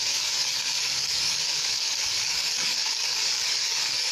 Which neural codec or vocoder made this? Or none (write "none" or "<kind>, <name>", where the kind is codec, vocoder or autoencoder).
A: codec, DAC